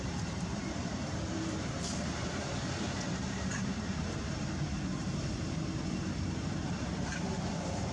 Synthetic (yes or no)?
yes